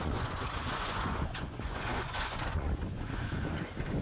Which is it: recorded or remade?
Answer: remade